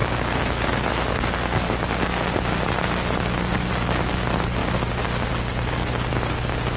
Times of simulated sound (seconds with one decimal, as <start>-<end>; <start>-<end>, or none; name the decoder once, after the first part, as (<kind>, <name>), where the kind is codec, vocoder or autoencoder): none